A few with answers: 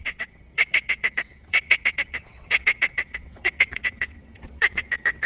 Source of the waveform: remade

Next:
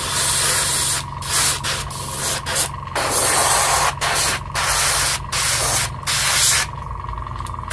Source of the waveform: recorded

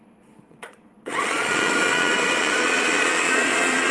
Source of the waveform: remade